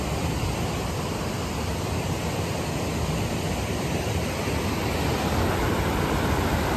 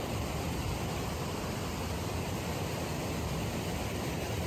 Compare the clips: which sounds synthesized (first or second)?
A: second